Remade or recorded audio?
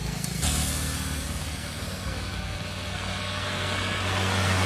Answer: remade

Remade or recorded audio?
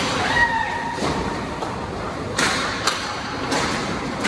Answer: remade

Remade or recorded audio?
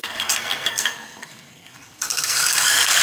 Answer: remade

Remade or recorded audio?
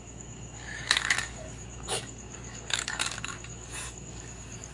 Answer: remade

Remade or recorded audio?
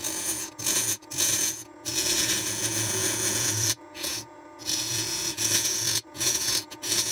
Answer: remade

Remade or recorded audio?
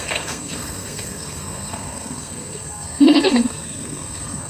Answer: remade